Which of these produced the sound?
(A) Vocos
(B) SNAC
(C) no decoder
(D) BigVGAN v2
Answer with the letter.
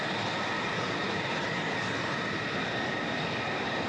C